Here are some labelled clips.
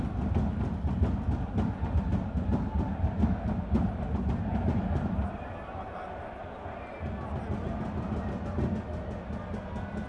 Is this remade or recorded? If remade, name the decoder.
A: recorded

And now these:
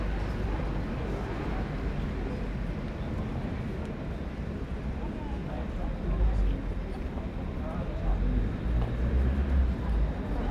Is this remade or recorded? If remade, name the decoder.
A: recorded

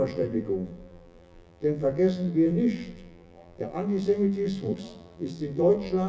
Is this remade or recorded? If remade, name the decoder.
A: remade, vocoder, BigVGAN v2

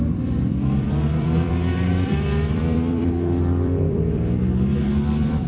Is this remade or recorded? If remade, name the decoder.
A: remade, vocoder, BigVGAN v2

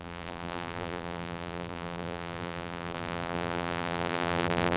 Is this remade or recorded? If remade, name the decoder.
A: remade, vocoder, BigVGAN v2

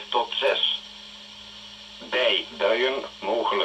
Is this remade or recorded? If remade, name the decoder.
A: recorded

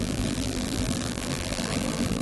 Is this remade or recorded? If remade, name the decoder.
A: remade, vocoder, BigVGAN v2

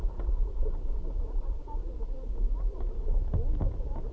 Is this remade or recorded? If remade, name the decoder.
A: remade, vocoder, BigVGAN v2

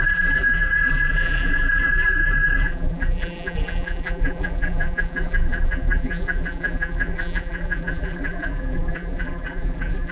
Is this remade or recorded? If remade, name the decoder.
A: remade, vocoder, BigVGAN v2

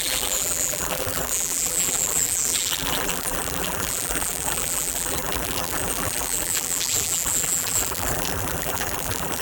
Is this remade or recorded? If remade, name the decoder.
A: remade, vocoder, BigVGAN v2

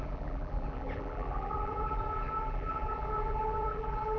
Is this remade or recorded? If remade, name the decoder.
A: remade, vocoder, BigVGAN v2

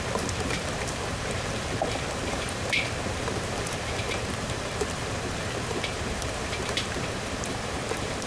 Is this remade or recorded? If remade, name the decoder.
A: remade, vocoder, BigVGAN v2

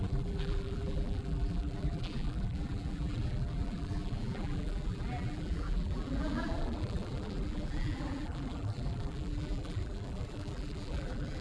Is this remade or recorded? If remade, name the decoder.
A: remade, vocoder, BigVGAN v2